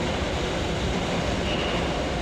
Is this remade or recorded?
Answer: recorded